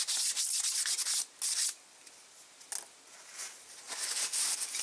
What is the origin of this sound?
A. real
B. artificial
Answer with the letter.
A